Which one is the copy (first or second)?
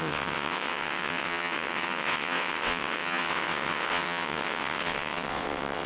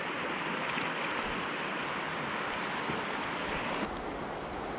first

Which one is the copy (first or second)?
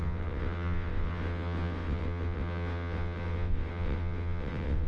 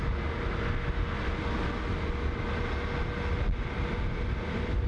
first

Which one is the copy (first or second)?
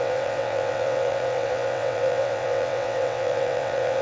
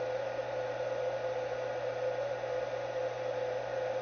first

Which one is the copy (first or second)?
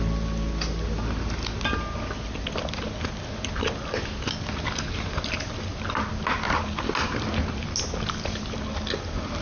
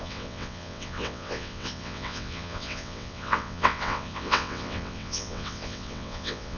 second